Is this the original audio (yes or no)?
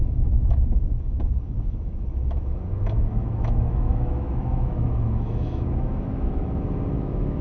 no